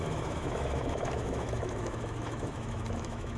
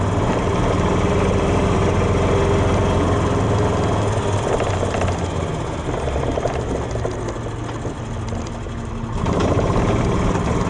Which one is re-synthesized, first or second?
first